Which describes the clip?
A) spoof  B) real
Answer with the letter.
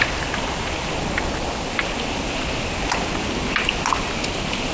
B